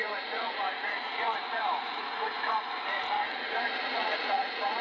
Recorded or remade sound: remade